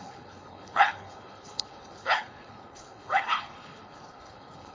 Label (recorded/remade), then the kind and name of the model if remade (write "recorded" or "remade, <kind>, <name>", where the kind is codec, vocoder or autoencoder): remade, codec, HILCodec